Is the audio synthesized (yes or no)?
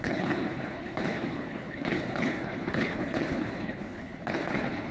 yes